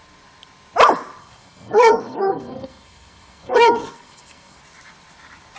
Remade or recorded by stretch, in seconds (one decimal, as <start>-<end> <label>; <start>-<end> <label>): 0.0-1.2 recorded; 1.2-4.6 remade; 4.6-5.6 recorded